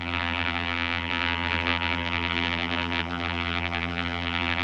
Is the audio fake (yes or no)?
yes